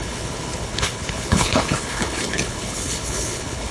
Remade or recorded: remade